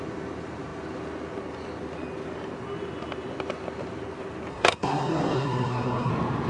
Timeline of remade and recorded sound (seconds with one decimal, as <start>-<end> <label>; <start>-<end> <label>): 0.0-4.5 recorded; 4.5-6.1 remade; 6.1-6.5 recorded